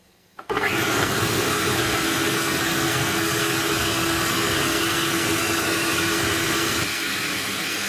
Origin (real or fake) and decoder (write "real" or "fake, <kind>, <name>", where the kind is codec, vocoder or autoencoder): fake, codec, SNAC